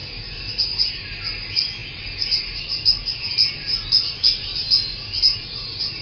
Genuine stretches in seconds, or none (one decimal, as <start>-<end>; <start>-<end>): 0.0-6.0